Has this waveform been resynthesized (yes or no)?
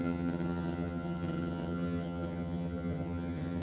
yes